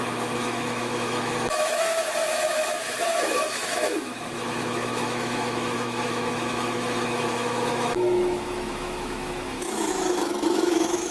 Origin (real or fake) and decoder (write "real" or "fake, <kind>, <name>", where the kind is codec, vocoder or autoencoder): fake, autoencoder, DAC-VAE